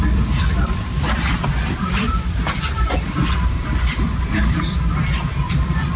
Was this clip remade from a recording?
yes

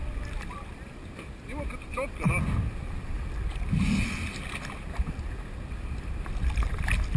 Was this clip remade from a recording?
no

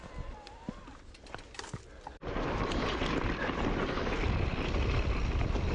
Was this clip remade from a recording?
no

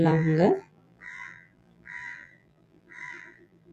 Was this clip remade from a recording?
yes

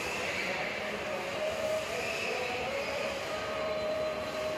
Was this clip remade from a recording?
yes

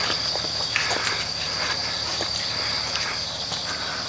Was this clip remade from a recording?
no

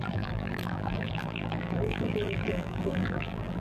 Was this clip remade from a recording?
yes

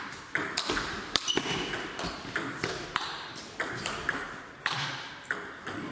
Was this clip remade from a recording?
yes